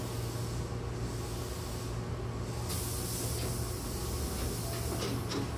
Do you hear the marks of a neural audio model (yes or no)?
no